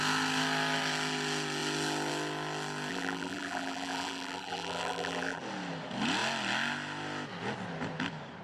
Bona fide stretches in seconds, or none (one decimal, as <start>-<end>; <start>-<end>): 0.0-2.9; 5.4-8.4